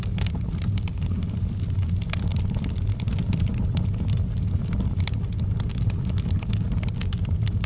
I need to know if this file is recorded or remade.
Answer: recorded